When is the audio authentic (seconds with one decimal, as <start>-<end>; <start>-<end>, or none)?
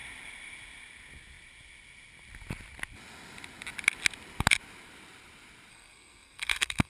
0.0-5.7